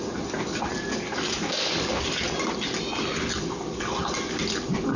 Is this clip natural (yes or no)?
yes